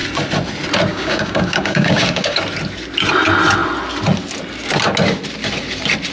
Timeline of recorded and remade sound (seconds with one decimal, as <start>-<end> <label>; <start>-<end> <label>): 0.0-0.9 recorded; 0.9-2.4 remade; 2.4-6.1 recorded